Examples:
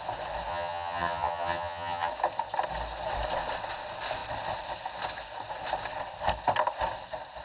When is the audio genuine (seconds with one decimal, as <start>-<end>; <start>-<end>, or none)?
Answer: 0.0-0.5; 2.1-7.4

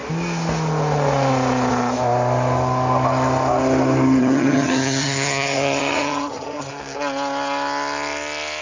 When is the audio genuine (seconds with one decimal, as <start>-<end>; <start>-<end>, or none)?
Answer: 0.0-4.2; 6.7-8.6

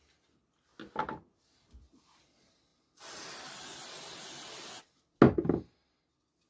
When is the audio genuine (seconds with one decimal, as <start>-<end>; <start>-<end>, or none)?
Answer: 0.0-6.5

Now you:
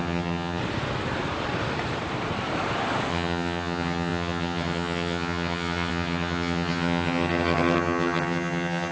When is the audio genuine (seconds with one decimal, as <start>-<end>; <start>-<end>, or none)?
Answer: 0.6-3.1

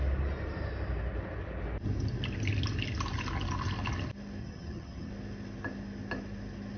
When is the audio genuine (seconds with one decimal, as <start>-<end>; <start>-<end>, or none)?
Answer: 0.0-4.4; 5.1-6.8

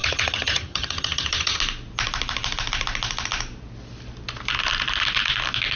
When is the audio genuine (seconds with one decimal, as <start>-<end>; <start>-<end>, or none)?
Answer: 1.6-5.8

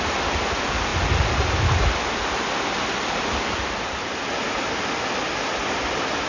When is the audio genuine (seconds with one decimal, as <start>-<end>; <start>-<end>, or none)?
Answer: 0.0-6.3